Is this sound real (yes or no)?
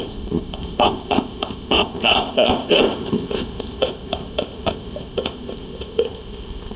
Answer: no